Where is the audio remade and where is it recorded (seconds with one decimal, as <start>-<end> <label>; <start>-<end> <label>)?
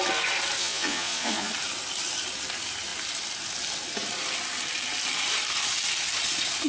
0.0-0.6 recorded; 0.6-1.5 remade; 1.5-6.7 recorded